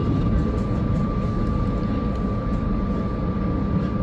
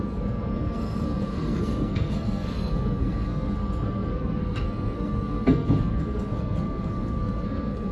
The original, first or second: first